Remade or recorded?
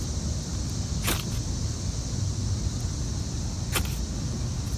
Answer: recorded